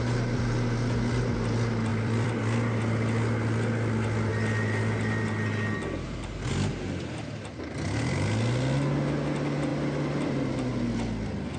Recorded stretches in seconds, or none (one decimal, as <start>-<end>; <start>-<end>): 0.0-1.9; 2.4-11.6